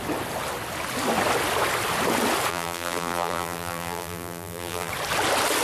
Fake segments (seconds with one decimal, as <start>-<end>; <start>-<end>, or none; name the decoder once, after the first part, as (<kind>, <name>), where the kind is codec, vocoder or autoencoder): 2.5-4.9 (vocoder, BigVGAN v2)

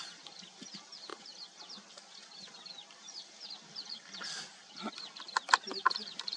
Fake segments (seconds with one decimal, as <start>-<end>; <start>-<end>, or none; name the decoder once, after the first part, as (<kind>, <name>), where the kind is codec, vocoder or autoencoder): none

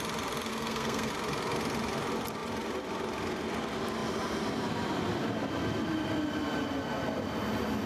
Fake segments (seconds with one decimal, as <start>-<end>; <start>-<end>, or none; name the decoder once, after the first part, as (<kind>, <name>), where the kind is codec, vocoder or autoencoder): 0.5-1.1 (codec, SNAC)

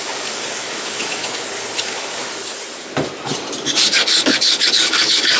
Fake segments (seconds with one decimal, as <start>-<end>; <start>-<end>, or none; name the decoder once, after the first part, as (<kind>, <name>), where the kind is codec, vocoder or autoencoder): 0.0-1.2 (codec, DAC); 1.8-2.2; 4.1-5.4

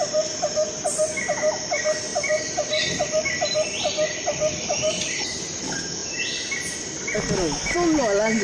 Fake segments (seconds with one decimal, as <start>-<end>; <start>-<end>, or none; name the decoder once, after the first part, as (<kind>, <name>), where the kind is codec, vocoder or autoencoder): 2.1-5.4 (vocoder, BigVGAN v2)

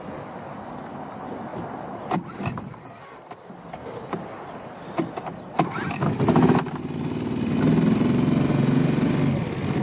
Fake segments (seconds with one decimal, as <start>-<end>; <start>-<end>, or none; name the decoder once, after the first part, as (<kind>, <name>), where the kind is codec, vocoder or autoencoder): 8.5-9.1 (vocoder, Vocos)

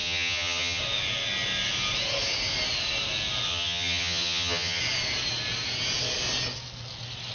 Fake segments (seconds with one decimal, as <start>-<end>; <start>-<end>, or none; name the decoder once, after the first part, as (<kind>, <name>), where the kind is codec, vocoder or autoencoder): 0.0-0.8 (vocoder, HiFi-GAN); 3.5-4.8

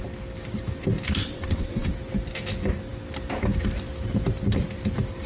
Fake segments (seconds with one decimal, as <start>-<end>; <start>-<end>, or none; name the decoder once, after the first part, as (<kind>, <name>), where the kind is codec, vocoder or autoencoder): 1.2-1.9 (vocoder, WaveNeXt)